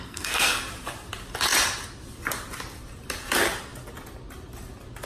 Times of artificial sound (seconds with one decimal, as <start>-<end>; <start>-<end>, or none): 0.0-0.7